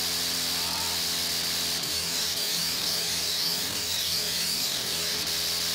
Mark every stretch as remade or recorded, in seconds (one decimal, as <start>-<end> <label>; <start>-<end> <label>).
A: 0.0-1.8 recorded; 1.8-5.2 remade; 5.2-5.7 recorded